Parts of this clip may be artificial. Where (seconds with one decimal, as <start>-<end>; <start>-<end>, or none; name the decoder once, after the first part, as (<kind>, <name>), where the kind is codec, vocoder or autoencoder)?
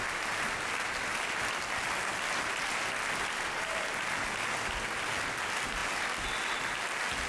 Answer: none